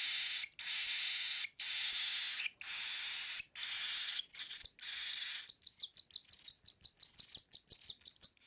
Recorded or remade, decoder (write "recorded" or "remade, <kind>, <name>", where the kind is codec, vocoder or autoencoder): recorded